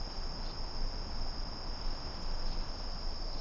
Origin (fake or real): real